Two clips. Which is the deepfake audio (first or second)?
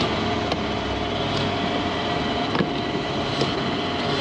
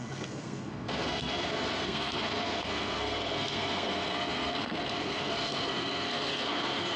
second